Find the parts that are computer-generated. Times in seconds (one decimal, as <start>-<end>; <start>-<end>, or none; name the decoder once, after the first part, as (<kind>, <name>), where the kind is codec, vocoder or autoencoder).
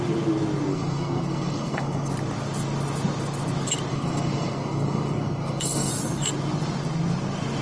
0.7-2.1 (codec, SNAC); 3.9-5.9